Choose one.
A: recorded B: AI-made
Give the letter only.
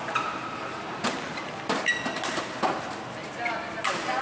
A